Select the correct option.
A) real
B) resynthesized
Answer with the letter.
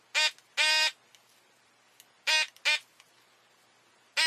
A